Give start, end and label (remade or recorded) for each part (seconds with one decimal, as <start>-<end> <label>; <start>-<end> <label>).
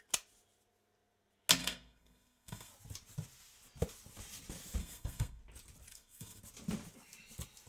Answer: 0.0-1.6 recorded; 1.6-2.7 remade; 2.7-4.8 recorded; 4.8-5.4 remade; 5.4-5.9 recorded; 5.9-6.4 remade; 6.4-7.7 recorded